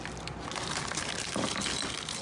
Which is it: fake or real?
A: real